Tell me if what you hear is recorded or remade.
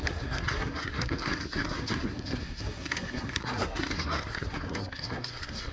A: remade